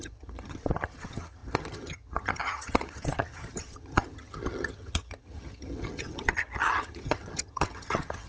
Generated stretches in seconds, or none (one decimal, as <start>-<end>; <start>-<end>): 0.0-8.3